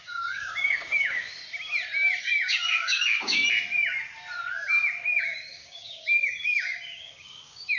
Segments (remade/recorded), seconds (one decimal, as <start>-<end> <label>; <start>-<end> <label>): 0.0-1.4 remade; 1.4-2.2 recorded; 2.2-3.4 remade; 3.4-5.2 recorded; 5.2-7.8 remade